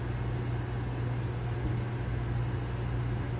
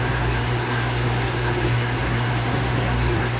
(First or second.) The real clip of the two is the first